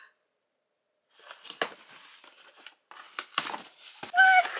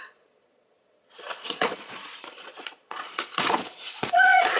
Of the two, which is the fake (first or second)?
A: second